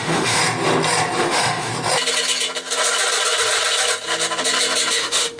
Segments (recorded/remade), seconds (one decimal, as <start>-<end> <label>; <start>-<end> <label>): 0.0-0.4 remade; 0.4-1.2 recorded; 1.2-1.7 remade; 1.7-4.9 recorded; 4.9-5.4 remade